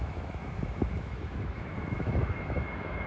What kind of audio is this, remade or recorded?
remade